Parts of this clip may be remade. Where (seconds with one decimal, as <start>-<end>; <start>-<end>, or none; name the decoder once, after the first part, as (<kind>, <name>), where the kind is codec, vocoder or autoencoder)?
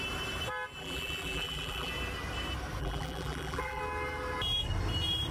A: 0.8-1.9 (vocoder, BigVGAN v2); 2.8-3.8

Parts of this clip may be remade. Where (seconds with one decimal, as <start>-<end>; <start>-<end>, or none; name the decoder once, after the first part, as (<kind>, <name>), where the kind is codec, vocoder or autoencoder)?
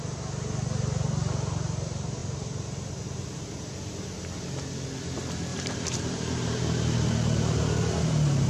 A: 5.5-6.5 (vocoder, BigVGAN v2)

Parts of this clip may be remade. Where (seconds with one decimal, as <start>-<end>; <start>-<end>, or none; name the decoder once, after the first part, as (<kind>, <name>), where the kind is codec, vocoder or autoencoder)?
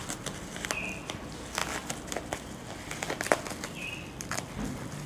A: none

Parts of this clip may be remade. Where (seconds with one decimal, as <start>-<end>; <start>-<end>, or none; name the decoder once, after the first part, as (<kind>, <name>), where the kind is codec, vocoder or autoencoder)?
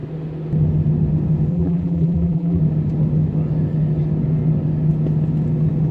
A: 1.5-2.6 (vocoder, BigVGAN v2)